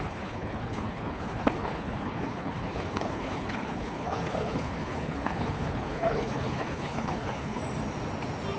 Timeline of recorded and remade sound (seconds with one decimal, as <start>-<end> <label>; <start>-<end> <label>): 0.0-7.6 remade; 7.6-8.6 recorded